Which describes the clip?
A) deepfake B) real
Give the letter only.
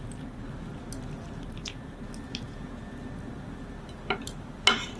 B